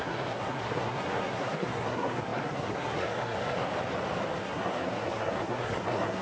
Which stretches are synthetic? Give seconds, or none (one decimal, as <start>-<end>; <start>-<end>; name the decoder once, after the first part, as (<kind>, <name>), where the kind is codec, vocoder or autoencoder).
0.0-3.7 (codec, SNAC); 4.4-6.2